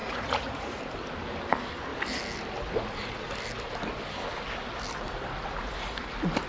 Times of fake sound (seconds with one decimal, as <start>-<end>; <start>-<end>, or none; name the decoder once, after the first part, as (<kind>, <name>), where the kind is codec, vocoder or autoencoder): 0.0-0.8 (vocoder, Vocos)